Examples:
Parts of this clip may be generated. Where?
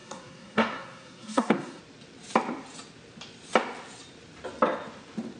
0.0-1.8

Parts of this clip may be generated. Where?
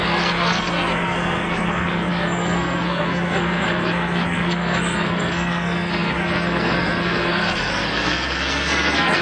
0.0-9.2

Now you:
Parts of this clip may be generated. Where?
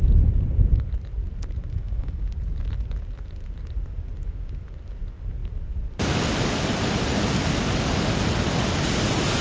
1.7-2.2